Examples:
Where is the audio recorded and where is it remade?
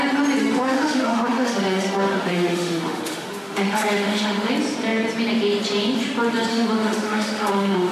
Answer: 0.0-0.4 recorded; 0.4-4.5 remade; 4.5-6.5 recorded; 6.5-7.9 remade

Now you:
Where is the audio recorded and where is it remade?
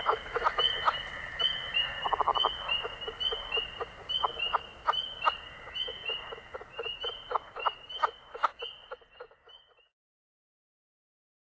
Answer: 0.0-5.9 recorded; 5.9-8.5 remade; 8.5-11.5 recorded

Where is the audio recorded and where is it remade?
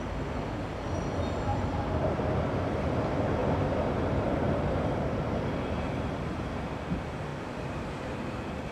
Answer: 0.0-1.5 recorded; 1.5-2.2 remade; 2.2-3.4 recorded; 3.4-6.6 remade; 6.6-7.3 recorded; 7.3-8.2 remade; 8.2-8.7 recorded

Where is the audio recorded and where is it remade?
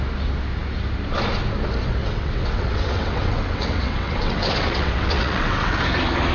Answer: 0.0-2.0 recorded; 2.0-5.8 remade; 5.8-6.3 recorded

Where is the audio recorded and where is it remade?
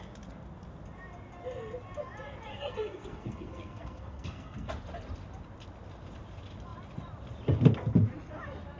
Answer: 0.0-2.5 recorded; 2.5-4.7 remade; 4.7-8.8 recorded